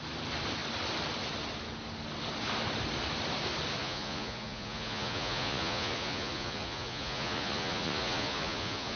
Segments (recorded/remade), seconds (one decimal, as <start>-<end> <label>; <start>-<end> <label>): 0.0-3.8 recorded; 3.8-9.0 remade